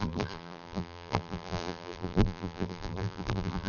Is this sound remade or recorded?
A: remade